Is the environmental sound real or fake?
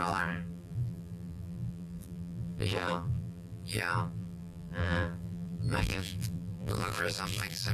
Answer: fake